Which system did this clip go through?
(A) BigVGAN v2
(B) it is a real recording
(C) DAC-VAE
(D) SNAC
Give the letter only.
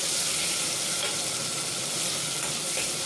B